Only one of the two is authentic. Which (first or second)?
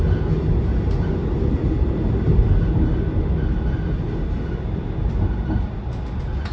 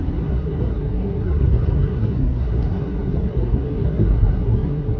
first